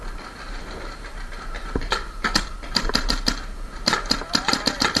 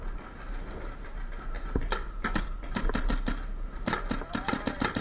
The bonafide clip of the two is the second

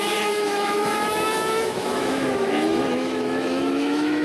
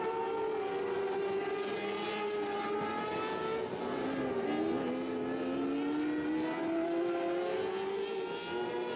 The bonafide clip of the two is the second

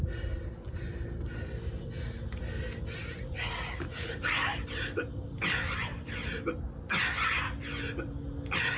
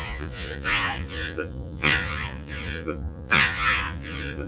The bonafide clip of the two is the first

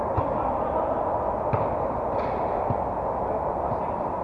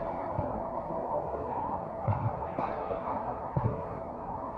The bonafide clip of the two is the first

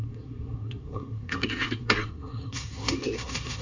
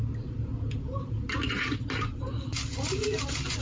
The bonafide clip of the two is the second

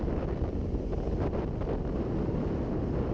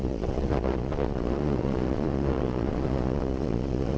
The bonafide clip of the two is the first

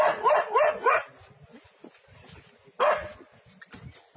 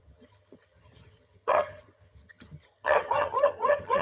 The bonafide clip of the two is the first